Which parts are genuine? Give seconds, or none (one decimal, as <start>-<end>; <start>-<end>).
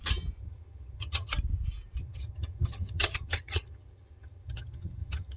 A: 0.0-0.4; 1.3-2.0